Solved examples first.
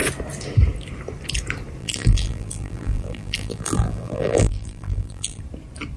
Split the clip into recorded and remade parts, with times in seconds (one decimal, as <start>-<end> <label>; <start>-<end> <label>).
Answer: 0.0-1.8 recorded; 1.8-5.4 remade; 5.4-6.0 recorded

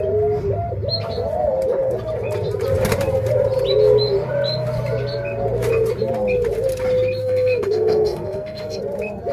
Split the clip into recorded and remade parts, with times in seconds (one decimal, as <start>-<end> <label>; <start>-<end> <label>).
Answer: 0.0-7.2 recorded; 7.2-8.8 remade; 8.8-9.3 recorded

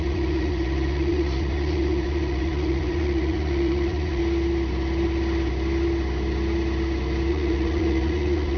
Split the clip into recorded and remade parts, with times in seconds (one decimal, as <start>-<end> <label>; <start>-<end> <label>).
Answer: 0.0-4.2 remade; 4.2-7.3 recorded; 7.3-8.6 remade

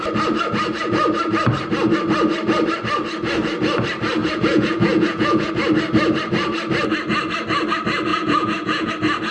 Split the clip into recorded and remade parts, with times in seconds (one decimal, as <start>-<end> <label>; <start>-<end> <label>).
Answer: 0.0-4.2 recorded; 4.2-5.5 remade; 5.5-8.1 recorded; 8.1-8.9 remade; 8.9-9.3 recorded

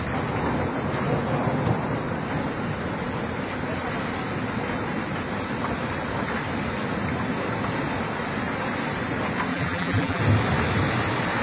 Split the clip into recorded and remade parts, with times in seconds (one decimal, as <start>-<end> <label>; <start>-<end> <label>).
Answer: 0.0-9.5 recorded; 9.5-10.2 remade; 10.2-11.4 recorded